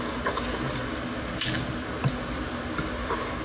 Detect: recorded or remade recorded